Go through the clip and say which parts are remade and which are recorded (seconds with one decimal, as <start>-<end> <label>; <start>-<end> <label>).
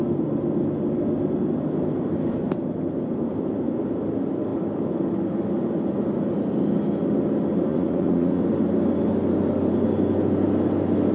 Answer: 0.0-7.7 recorded; 7.7-8.4 remade; 8.4-11.1 recorded